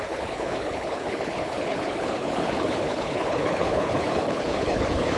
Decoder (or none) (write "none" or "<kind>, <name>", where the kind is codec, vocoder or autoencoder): codec, HILCodec